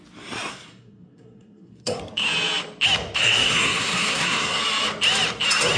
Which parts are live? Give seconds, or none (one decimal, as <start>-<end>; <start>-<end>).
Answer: 0.0-0.5; 2.0-3.2; 4.6-5.8